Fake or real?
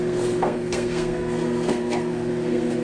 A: fake